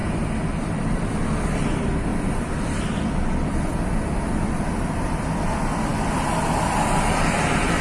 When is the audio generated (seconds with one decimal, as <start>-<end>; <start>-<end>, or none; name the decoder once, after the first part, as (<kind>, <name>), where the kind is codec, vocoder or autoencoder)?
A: 2.1-2.8 (vocoder, BigVGAN v2)